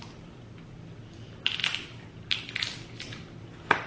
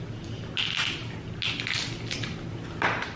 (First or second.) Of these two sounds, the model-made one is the first